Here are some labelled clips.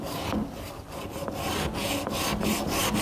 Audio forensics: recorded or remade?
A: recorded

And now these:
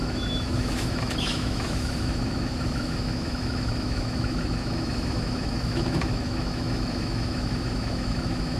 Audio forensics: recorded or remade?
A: remade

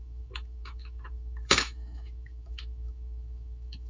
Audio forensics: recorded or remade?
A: remade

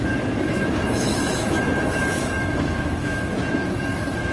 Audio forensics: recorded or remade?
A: remade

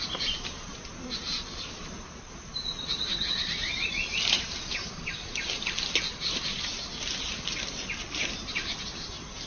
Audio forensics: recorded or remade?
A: recorded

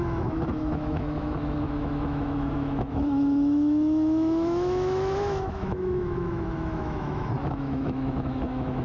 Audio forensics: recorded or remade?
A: remade